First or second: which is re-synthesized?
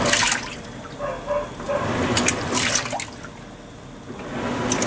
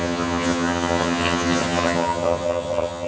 second